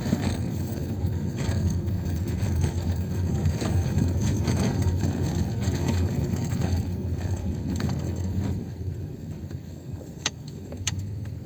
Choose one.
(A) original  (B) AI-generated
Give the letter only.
B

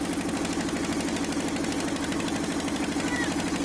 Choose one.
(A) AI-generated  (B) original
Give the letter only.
B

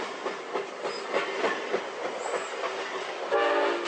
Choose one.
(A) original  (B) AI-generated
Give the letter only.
A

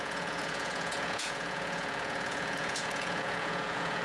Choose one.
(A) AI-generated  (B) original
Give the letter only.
A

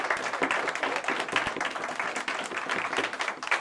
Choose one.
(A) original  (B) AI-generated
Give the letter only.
A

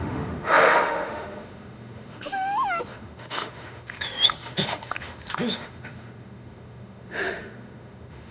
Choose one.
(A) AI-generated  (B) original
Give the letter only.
A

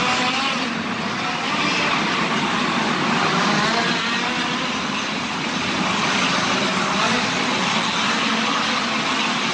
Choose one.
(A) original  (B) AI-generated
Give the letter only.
A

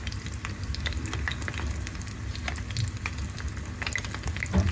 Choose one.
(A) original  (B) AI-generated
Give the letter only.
A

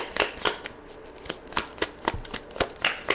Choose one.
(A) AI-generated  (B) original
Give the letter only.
B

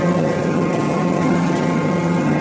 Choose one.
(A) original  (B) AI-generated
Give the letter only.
B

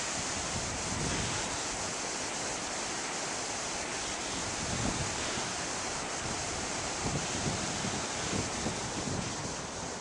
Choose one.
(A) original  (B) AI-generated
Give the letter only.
A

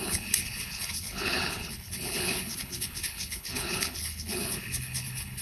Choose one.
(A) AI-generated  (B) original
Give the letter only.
A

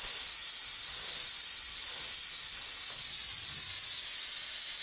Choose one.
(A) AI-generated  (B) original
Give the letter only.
B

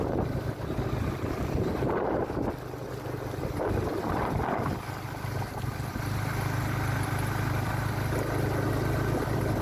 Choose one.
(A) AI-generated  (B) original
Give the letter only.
B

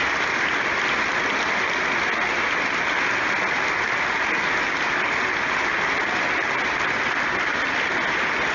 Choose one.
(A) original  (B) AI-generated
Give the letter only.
A